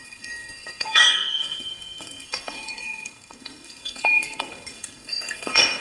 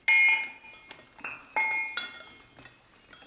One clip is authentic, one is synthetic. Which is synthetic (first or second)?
first